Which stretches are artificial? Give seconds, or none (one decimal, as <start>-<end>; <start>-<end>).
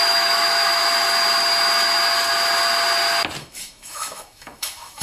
0.0-0.8; 3.4-5.0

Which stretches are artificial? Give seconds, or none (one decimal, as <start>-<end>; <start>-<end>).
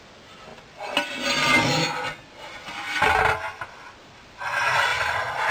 none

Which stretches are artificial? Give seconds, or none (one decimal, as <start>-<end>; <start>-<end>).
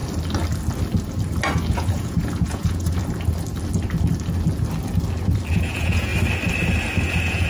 1.7-3.0; 5.5-6.1; 7.1-7.5